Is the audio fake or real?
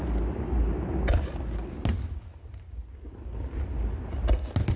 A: real